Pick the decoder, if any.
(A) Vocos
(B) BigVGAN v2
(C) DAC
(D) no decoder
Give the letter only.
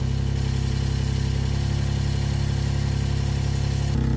D